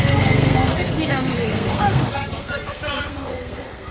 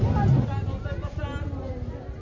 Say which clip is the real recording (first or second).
second